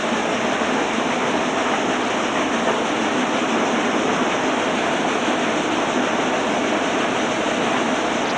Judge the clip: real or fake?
real